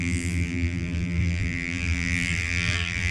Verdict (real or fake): fake